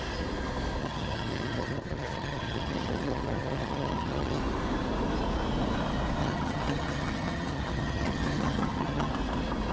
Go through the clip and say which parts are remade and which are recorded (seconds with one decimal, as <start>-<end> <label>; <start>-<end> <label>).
0.0-0.8 recorded; 0.8-4.4 remade; 4.4-6.2 recorded; 6.2-9.1 remade; 9.1-9.7 recorded